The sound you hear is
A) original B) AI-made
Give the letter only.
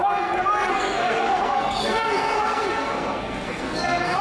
B